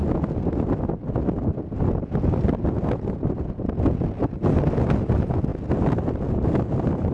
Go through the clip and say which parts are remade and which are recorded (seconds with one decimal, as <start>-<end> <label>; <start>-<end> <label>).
0.0-7.1 recorded